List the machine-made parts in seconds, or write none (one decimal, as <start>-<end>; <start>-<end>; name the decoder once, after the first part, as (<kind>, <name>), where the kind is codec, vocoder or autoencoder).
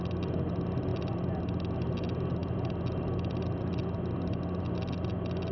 0.9-1.4 (vocoder, BigVGAN v2); 2.4-3.6